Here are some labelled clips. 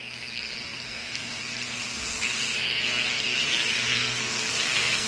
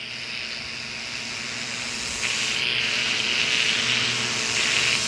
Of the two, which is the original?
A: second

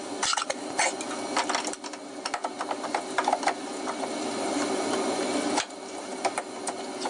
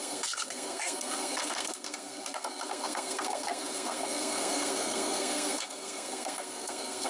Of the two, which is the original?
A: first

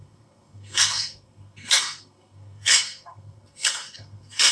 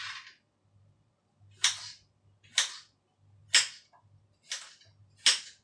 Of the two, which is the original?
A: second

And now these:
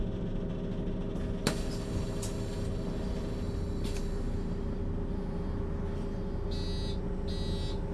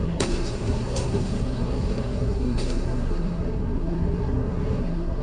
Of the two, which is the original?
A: first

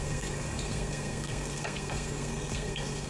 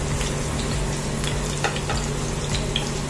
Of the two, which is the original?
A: second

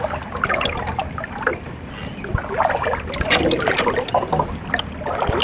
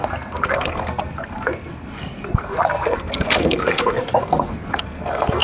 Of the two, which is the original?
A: first